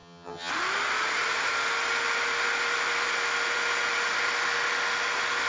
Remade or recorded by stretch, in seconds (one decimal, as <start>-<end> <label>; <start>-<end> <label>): 0.0-0.5 remade; 0.5-5.5 recorded